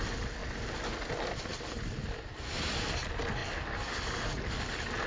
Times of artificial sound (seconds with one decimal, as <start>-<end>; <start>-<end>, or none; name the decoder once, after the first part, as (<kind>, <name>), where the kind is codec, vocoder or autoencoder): none